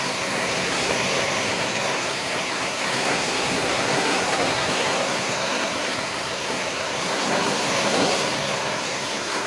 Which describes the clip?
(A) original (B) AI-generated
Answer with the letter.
B